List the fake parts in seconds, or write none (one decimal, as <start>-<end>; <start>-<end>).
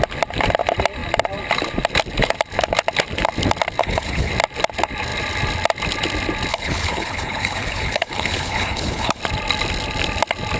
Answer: 3.8-4.3; 6.5-9.2